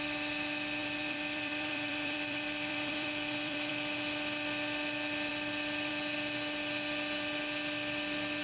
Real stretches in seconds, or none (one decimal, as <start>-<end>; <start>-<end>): 0.0-0.8; 3.7-8.4

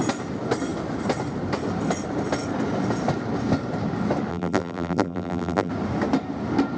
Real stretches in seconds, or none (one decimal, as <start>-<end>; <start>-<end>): 0.0-4.3; 5.7-6.8

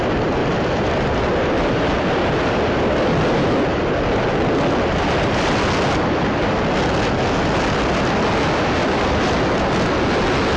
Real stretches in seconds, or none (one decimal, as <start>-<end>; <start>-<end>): 0.0-0.4; 5.6-8.8; 10.0-10.6

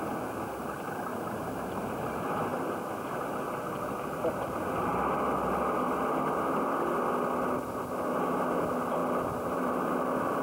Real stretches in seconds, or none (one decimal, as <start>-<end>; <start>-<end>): 0.0-1.1; 2.1-9.0; 9.9-10.4

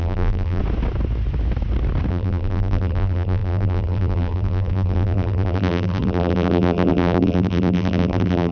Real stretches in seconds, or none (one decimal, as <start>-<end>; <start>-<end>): 0.6-2.1

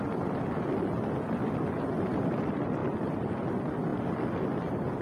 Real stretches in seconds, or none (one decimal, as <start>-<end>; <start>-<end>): 0.0-3.9

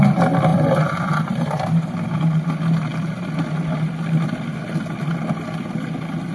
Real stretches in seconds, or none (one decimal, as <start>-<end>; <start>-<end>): 0.0-0.5; 2.2-6.3